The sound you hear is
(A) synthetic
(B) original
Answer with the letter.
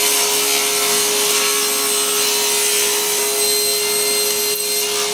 B